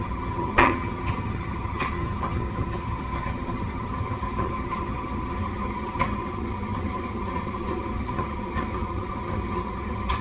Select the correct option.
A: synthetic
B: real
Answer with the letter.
A